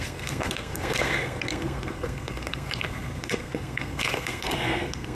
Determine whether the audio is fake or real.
fake